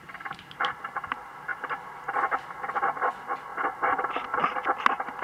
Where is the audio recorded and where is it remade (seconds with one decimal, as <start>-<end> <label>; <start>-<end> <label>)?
0.0-1.5 recorded; 1.5-2.3 remade; 2.3-3.5 recorded; 3.5-4.1 remade; 4.1-5.2 recorded